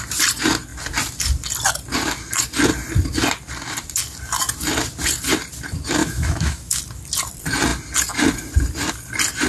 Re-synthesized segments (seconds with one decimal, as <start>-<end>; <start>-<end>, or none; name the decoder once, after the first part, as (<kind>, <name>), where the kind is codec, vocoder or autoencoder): 6.0-6.8 (autoencoder, DAC-VAE)